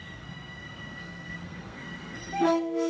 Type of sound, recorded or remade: remade